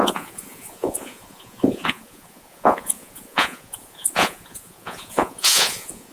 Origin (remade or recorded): remade